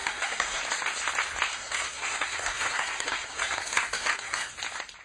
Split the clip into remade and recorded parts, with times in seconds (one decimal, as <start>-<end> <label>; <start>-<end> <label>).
0.0-0.6 remade; 0.6-1.5 recorded; 1.5-4.5 remade; 4.5-5.0 recorded